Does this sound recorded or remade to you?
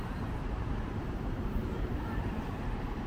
remade